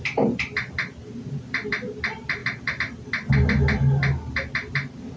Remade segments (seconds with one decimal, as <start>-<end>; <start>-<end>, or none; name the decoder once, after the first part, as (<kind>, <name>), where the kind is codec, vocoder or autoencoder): none